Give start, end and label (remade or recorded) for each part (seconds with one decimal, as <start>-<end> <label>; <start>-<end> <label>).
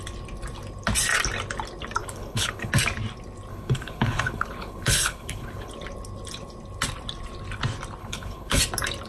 0.0-2.0 recorded; 2.0-2.7 remade; 2.7-3.5 recorded; 3.5-5.7 remade; 5.7-8.0 recorded; 8.0-8.6 remade; 8.6-9.1 recorded